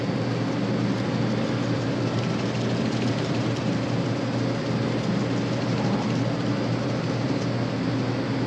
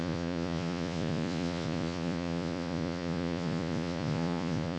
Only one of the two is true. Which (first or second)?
first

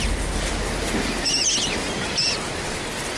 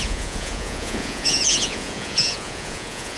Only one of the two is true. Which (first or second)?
first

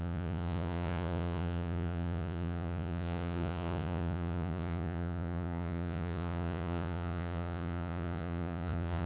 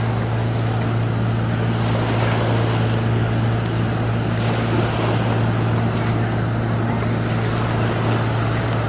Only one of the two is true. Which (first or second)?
second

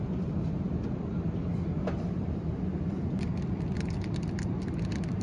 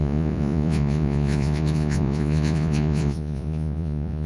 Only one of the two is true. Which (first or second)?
first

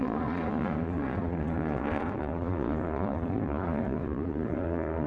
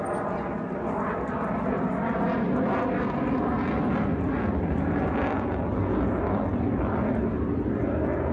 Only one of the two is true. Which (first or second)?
second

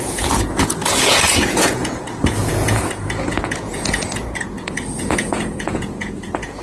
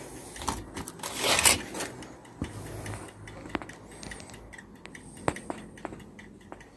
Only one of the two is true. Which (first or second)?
second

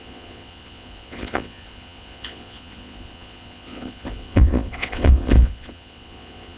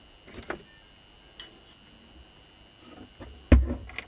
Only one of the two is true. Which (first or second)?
second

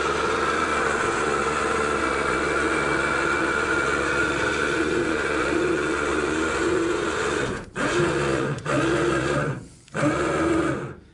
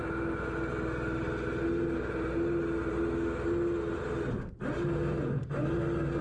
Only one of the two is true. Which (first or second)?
second